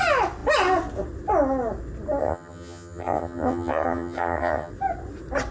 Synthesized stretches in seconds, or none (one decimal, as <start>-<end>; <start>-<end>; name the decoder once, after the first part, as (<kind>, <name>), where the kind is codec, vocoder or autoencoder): 2.2-4.7 (vocoder, HiFi-GAN)